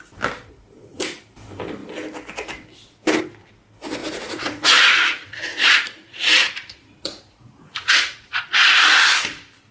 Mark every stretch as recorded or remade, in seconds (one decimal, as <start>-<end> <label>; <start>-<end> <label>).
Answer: 0.0-4.0 recorded; 4.0-8.3 remade; 8.3-9.7 recorded